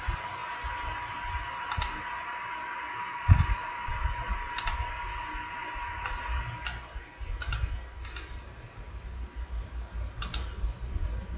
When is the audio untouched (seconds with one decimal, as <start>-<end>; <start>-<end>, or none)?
0.4-3.4; 3.9-8.2